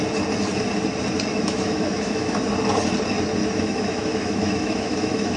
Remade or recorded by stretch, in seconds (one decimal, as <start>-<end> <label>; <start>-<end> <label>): 0.0-1.3 recorded; 1.3-2.5 remade; 2.5-3.4 recorded; 3.4-5.4 remade